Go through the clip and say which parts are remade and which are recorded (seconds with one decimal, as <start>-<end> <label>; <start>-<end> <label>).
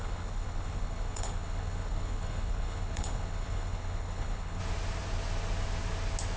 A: 0.0-4.6 remade; 4.6-6.4 recorded